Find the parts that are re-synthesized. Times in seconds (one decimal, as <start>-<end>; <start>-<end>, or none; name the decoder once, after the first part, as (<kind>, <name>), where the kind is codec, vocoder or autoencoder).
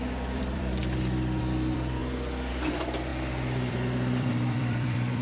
0.0-0.8 (vocoder, BigVGAN v2); 1.4-2.0; 2.5-5.2